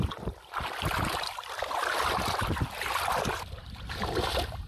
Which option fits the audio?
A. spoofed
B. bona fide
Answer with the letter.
B